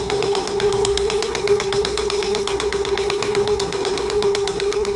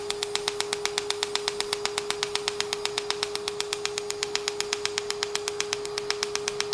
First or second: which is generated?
first